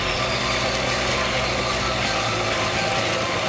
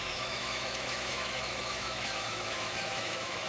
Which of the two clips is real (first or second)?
first